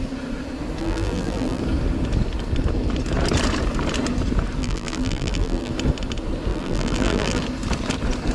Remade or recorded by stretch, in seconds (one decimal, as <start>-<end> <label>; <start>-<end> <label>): 0.0-0.8 recorded; 0.8-1.6 remade; 1.6-4.6 recorded; 4.6-5.7 remade; 5.7-6.5 recorded; 6.5-7.4 remade; 7.4-8.3 recorded